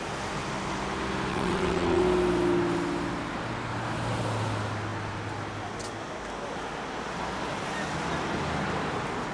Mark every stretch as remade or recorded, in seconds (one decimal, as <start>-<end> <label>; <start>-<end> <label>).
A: 0.0-1.3 recorded; 1.3-2.0 remade; 2.0-9.3 recorded